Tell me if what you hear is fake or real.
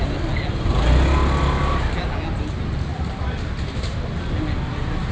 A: real